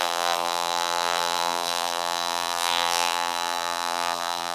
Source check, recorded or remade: remade